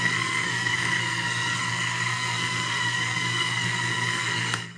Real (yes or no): no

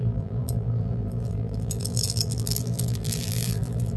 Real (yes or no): no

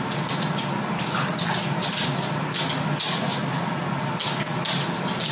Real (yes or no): yes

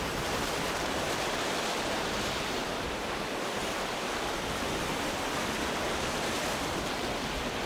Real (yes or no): yes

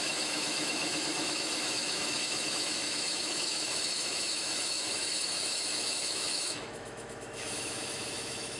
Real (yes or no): no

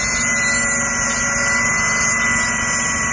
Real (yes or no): yes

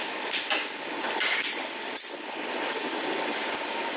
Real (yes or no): yes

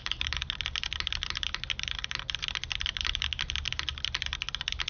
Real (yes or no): yes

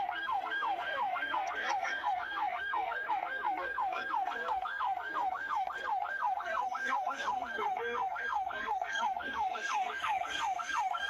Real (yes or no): no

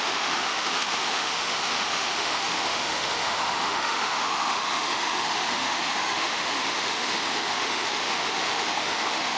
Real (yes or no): no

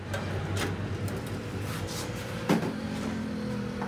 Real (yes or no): no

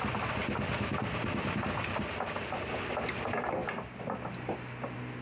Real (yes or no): yes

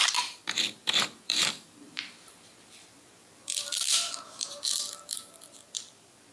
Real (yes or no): no